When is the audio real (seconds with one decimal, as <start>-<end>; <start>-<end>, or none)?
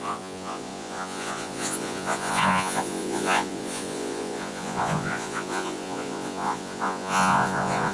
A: none